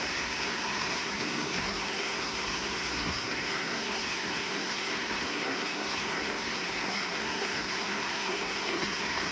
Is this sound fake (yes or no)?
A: yes